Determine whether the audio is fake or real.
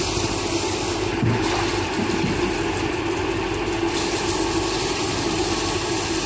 real